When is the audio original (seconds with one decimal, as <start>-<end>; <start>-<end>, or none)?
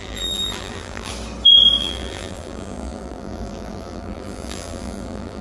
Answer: 1.1-1.8